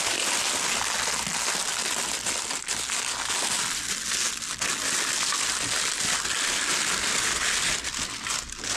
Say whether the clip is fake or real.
real